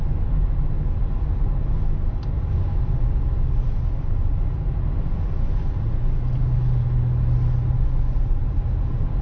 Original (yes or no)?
yes